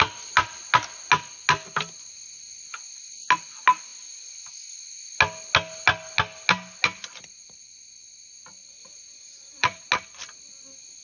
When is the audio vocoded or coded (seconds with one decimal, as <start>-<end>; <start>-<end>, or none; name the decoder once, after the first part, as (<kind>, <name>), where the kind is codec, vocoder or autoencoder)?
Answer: 8.8-9.9 (vocoder, Vocos)